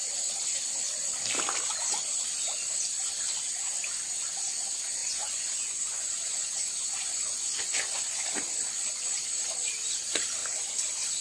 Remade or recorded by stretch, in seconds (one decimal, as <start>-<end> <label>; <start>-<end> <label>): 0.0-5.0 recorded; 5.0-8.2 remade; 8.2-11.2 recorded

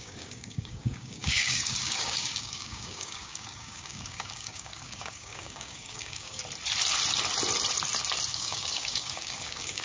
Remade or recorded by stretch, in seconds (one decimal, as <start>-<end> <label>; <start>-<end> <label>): 0.0-6.4 remade; 6.4-8.3 recorded; 8.3-9.8 remade

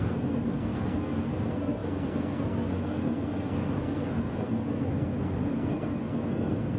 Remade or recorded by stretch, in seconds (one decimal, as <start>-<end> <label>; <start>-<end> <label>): 0.0-6.8 remade

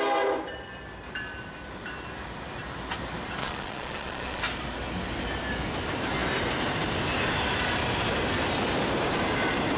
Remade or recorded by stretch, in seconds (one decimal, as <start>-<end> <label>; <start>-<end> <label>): 0.0-3.4 recorded; 3.4-4.4 remade; 4.4-9.8 recorded

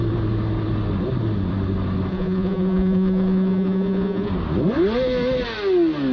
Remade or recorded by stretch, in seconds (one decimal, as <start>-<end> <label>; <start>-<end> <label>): 0.0-2.1 recorded; 2.1-4.3 remade; 4.3-6.1 recorded

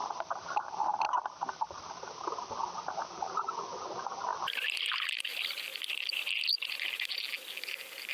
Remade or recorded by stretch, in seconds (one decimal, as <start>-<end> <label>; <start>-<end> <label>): 0.0-8.1 recorded

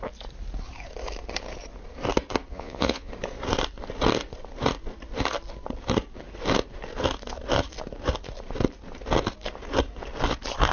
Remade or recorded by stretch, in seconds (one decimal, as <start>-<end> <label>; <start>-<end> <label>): 0.0-2.5 recorded; 2.5-3.1 remade; 3.1-10.7 recorded